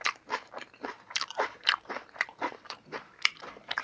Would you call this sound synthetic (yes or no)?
yes